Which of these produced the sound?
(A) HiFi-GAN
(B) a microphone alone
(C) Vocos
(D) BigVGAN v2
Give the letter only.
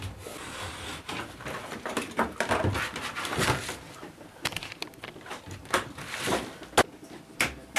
B